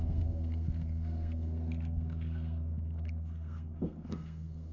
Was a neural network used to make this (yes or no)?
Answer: yes